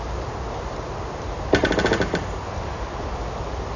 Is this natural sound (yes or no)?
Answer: yes